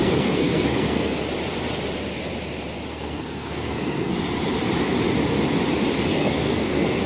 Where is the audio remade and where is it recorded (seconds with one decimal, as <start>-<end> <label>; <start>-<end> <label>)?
0.0-1.2 remade; 1.2-2.9 recorded; 2.9-4.1 remade; 4.1-6.1 recorded; 6.1-7.1 remade